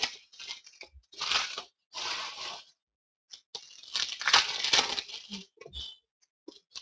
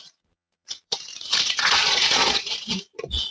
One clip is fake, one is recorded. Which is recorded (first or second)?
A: first